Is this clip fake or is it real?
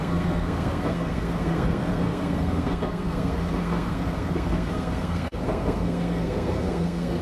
fake